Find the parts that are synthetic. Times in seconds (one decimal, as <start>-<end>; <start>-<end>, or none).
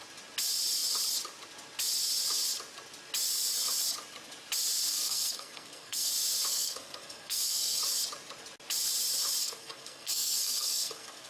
4.9-6.1; 6.5-7.8; 9.4-11.3